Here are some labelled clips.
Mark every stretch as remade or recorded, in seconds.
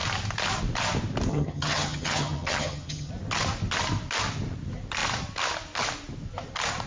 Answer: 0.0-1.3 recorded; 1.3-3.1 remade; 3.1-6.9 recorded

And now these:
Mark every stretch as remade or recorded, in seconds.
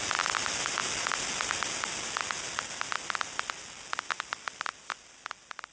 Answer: 0.0-5.7 recorded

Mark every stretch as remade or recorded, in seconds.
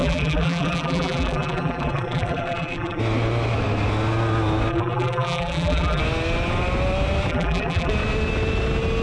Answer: 0.0-3.0 remade; 3.0-4.7 recorded; 4.7-6.0 remade; 6.0-7.3 recorded; 7.3-7.9 remade; 7.9-9.0 recorded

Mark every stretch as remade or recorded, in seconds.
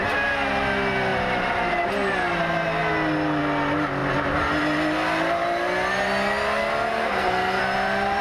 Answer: 0.0-6.9 recorded; 6.9-7.6 remade; 7.6-8.2 recorded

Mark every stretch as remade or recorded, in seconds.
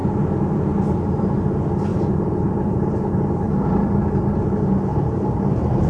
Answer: 0.0-1.9 recorded; 1.9-3.9 remade; 3.9-4.9 recorded; 4.9-5.9 remade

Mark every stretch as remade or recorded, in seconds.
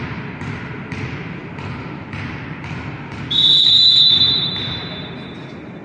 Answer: 0.0-5.8 recorded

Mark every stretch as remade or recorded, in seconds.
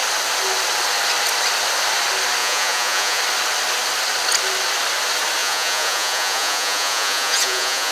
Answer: 0.0-2.4 recorded; 2.4-3.2 remade; 3.2-5.4 recorded; 5.4-7.9 remade